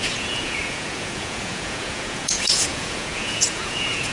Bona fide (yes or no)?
no